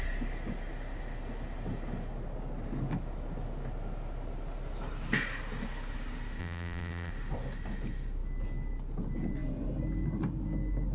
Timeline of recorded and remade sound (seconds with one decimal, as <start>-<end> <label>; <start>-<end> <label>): 0.0-6.4 recorded; 6.4-7.1 remade; 7.1-10.9 recorded